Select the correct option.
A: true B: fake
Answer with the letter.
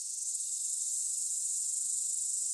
A